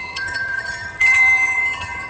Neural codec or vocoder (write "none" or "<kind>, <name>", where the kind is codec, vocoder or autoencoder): vocoder, HiFi-GAN